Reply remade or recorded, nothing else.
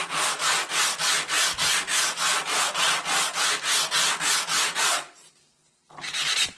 recorded